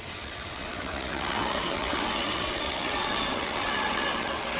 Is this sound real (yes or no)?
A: no